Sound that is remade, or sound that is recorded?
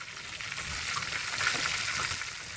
recorded